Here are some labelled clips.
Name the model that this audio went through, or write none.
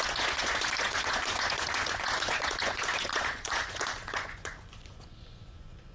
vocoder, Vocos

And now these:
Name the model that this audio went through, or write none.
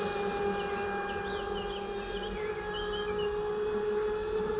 none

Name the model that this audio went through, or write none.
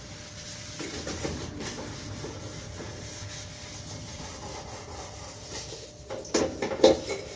none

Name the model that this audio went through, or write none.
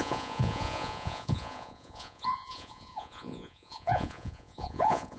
vocoder, Vocos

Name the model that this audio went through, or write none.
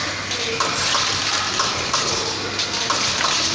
none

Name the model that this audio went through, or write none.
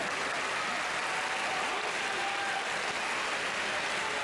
none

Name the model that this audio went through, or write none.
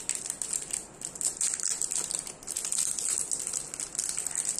none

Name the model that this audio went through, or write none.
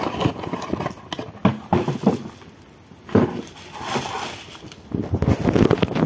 none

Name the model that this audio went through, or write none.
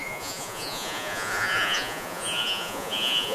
vocoder, Vocos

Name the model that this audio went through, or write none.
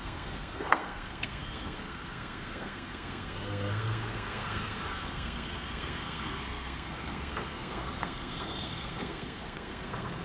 codec, SNAC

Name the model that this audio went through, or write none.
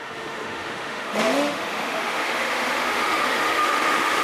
autoencoder, DAC-VAE